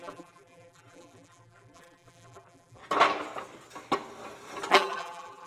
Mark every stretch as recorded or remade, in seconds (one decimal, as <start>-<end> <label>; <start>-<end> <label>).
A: 0.0-2.8 remade; 2.8-4.7 recorded; 4.7-5.5 remade